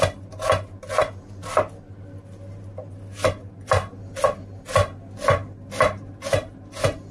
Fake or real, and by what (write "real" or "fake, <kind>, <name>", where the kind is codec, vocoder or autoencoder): real